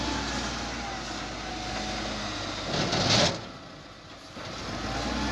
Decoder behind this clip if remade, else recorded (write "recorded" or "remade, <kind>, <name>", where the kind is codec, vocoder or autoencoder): recorded